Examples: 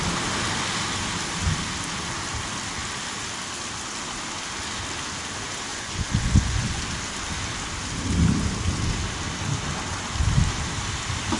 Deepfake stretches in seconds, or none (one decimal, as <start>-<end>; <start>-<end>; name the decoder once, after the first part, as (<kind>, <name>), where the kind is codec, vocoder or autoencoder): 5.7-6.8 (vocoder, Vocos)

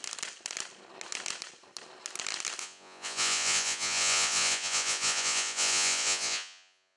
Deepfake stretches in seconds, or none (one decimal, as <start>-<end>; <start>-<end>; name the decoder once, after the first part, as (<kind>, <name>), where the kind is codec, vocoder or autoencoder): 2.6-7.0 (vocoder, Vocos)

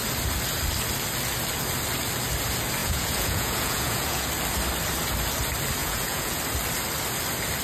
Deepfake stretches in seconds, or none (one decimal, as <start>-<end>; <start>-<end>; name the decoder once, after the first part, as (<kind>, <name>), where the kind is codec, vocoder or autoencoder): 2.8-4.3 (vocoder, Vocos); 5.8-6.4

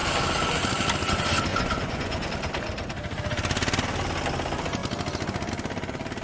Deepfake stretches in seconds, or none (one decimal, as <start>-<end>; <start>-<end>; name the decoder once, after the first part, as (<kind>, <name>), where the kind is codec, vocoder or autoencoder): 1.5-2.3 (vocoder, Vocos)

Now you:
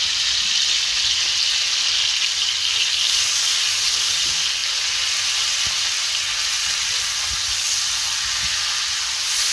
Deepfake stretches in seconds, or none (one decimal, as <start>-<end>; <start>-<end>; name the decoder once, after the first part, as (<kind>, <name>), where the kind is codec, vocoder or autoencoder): none